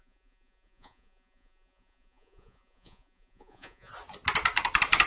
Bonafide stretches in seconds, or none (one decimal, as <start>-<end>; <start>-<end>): 3.9-5.1